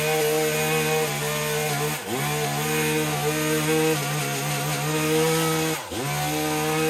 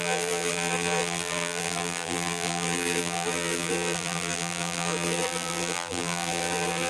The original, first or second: first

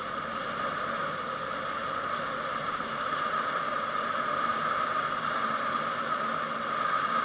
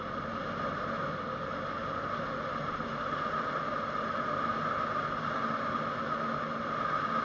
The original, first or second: second